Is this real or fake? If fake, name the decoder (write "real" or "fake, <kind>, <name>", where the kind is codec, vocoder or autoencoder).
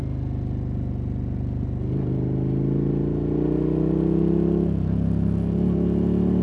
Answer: real